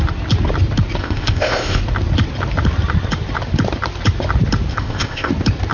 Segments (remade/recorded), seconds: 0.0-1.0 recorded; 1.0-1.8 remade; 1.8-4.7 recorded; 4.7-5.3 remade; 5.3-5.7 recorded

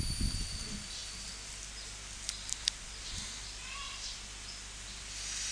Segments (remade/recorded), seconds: 0.0-5.5 recorded

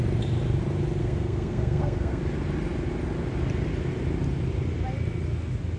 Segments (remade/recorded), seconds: 0.0-1.0 recorded; 1.0-2.2 remade; 2.2-5.8 recorded

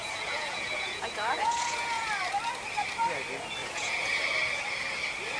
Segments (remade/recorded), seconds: 0.0-2.1 remade; 2.1-3.6 recorded; 3.6-4.2 remade; 4.2-5.4 recorded

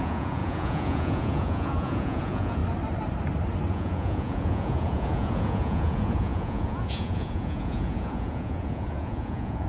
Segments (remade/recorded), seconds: 0.0-2.6 remade; 2.6-3.7 recorded; 3.7-9.7 remade

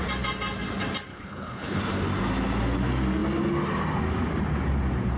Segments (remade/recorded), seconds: 0.0-1.1 recorded; 1.1-1.8 remade; 1.8-5.2 recorded